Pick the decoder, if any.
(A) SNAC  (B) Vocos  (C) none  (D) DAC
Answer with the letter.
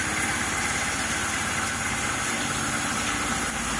C